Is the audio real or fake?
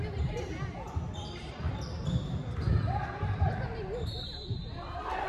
fake